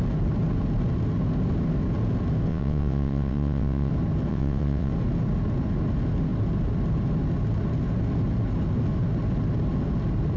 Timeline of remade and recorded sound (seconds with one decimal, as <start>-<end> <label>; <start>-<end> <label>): 0.0-2.5 recorded; 2.5-3.9 remade; 3.9-4.3 recorded; 4.3-4.9 remade; 4.9-10.4 recorded